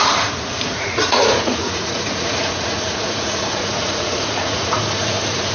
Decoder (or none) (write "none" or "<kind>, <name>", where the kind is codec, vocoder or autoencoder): vocoder, Vocos